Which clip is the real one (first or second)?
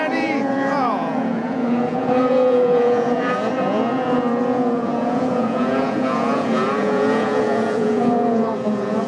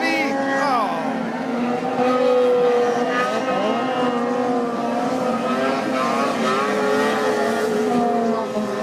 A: second